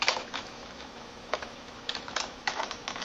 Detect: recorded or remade remade